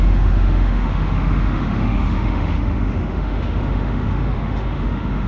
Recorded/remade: remade